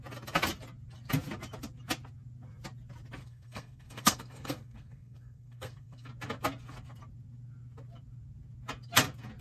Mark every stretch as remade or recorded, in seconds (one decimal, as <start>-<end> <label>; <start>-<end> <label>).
0.0-3.2 recorded; 3.2-6.1 remade; 6.1-9.4 recorded